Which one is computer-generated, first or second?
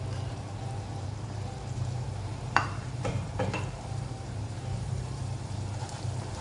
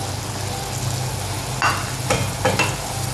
first